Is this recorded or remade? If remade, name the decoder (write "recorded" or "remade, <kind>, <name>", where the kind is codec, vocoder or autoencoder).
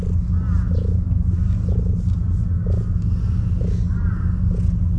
recorded